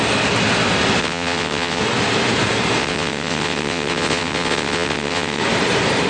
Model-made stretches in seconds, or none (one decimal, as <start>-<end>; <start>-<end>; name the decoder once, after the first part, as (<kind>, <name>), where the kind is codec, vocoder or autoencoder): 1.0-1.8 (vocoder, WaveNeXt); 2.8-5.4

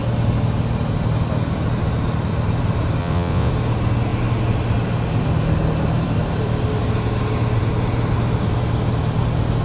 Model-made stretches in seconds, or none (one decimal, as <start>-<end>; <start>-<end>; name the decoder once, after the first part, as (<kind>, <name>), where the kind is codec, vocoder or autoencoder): 3.0-3.5 (vocoder, WaveNeXt)

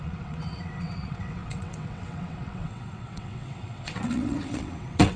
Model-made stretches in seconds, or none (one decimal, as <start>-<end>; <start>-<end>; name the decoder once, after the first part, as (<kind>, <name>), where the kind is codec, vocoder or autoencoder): 0.0-5.2 (vocoder, WaveNeXt)

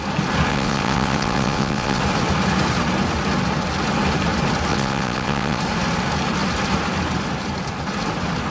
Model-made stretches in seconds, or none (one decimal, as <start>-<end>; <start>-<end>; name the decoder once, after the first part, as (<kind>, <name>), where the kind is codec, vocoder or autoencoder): 0.5-2.0 (vocoder, WaveNeXt); 4.7-5.6